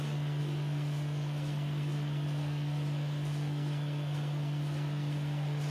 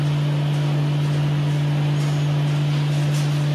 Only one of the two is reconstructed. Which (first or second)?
first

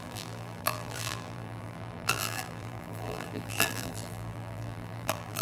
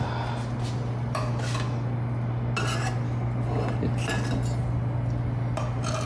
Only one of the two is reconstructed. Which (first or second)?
first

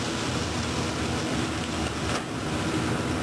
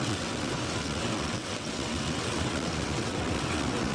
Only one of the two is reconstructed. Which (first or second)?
second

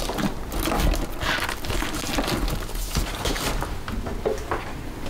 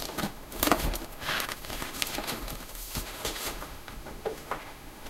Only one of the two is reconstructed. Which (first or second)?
second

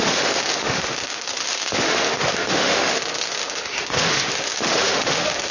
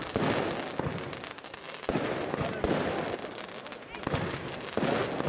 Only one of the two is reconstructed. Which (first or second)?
first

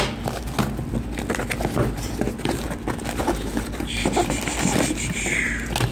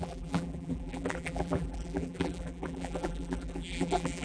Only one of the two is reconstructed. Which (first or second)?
second